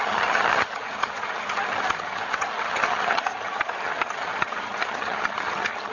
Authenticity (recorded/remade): remade